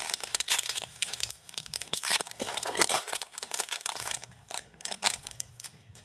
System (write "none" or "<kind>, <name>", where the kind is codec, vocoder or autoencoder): codec, SNAC